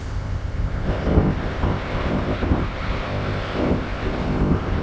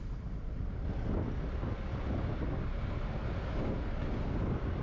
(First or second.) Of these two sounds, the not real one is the first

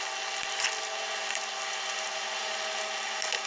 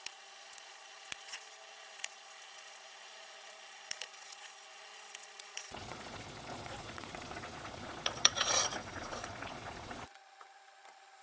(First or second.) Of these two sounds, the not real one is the second